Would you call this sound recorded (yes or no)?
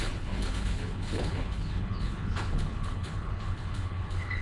no